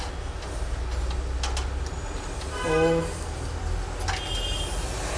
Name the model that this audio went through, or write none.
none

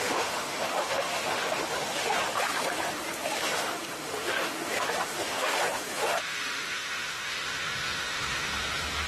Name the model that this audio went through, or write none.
autoencoder, DAC-VAE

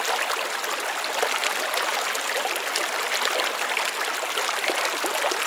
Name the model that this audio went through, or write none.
none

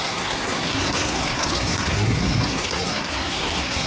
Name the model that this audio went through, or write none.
codec, SNAC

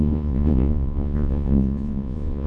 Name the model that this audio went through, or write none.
vocoder, Vocos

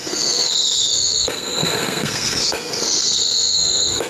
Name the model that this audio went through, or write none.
codec, SNAC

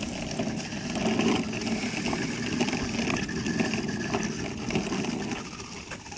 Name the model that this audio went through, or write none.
none